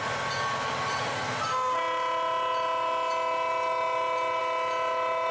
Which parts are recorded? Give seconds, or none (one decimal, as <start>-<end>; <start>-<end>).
0.0-5.3